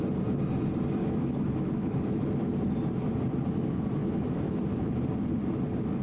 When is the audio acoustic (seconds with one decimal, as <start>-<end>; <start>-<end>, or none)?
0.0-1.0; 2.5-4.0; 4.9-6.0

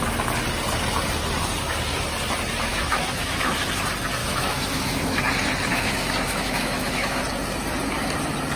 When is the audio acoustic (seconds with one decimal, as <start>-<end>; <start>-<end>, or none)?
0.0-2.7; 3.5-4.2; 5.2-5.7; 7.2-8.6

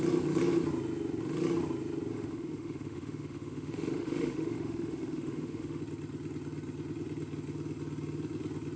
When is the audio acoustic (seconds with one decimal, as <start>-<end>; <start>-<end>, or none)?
0.0-2.1; 5.8-8.8